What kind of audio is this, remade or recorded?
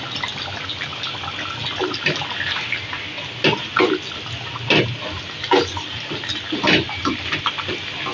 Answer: recorded